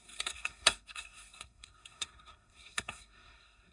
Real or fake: fake